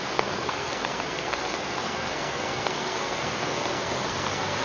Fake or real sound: fake